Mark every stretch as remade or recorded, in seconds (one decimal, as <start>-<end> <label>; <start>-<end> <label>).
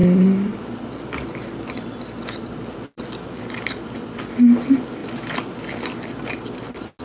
0.0-4.2 remade; 4.2-7.0 recorded